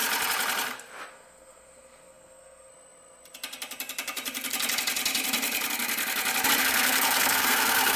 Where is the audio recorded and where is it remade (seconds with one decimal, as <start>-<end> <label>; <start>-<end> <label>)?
0.0-1.1 recorded; 1.1-2.7 remade; 2.7-6.6 recorded; 6.6-8.0 remade